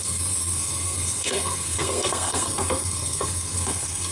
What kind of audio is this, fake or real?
fake